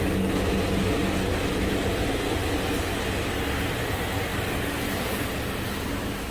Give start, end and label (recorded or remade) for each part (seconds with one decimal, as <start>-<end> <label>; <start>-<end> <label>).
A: 0.0-6.3 recorded